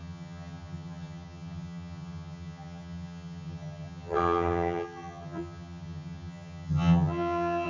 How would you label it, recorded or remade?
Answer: remade